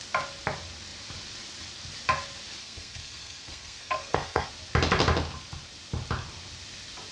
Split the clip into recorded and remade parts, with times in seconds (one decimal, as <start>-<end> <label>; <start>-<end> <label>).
0.0-2.6 recorded; 2.6-4.5 remade; 4.5-7.1 recorded